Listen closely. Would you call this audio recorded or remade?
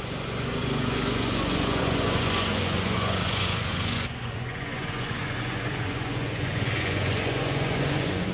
remade